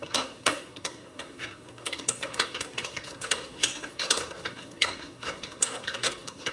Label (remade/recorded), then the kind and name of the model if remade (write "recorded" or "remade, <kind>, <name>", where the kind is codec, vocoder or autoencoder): remade, codec, SNAC